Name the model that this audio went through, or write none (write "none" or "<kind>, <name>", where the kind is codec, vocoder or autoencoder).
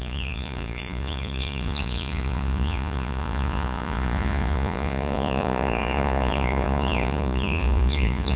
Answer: vocoder, Vocos